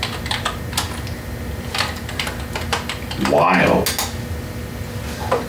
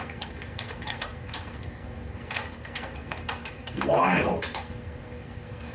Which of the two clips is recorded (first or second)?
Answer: first